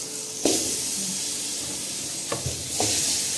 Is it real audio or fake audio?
real